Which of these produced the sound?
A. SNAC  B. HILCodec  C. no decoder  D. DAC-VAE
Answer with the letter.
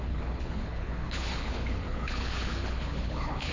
B